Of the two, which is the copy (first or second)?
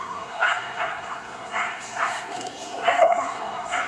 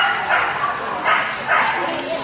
first